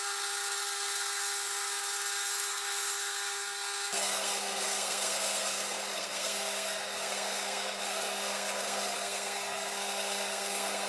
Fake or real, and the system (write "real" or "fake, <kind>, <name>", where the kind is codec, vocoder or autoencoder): fake, codec, SNAC